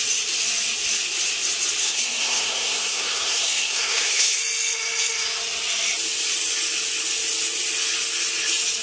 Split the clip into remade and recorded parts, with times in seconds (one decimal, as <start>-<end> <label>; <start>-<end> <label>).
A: 0.0-1.8 recorded; 1.8-4.4 remade; 4.4-8.8 recorded